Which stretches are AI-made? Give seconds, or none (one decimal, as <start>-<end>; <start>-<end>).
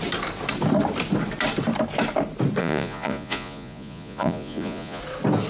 2.6-5.0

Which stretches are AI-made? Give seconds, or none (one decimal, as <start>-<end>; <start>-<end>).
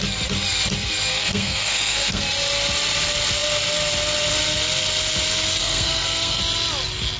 1.1-2.2; 5.6-6.4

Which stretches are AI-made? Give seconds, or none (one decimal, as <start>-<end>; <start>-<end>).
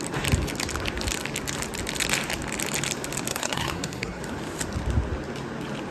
3.3-4.2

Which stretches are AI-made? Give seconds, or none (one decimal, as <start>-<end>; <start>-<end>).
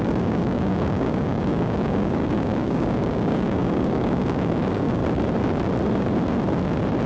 0.0-5.0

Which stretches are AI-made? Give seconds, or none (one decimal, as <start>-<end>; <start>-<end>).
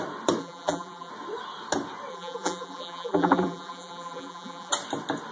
0.4-1.1; 2.1-4.7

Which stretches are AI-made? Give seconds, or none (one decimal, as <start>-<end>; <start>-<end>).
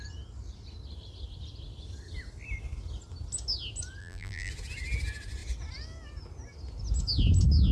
4.0-4.5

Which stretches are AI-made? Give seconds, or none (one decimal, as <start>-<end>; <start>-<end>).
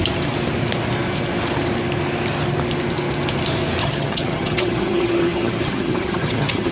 3.8-6.7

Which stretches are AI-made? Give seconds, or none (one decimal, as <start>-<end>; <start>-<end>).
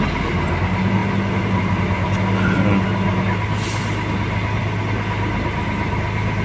none